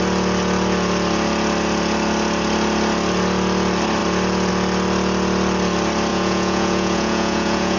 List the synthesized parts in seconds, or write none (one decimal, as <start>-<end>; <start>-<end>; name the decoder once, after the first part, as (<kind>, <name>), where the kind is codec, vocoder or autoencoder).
6.1-7.8 (vocoder, Vocos)

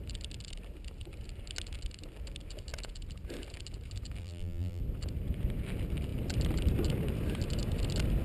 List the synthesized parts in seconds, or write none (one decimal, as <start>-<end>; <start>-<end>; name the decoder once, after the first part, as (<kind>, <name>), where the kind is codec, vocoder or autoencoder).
4.2-4.8 (vocoder, BigVGAN v2)

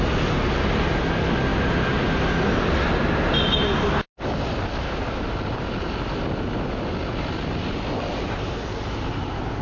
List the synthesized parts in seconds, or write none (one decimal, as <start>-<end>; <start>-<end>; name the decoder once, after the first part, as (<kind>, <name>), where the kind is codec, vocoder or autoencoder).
none